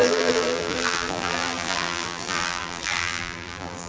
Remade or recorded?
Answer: remade